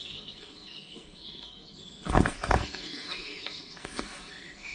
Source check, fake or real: fake